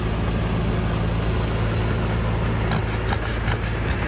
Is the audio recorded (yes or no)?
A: yes